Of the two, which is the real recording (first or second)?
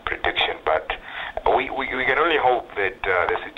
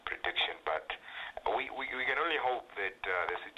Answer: second